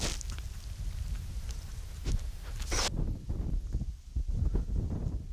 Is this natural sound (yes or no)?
yes